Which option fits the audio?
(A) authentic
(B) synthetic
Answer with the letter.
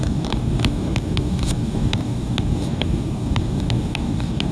B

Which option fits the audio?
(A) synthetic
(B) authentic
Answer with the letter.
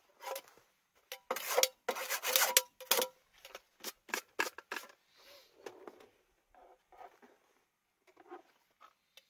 B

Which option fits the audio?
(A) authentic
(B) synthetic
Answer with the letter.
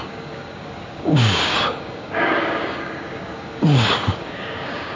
B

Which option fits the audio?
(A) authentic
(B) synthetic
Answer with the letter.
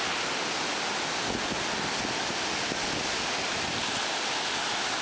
A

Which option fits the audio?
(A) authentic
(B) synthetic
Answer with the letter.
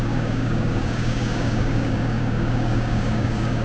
B